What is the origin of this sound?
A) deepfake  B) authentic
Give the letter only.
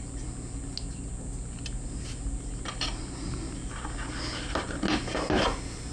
B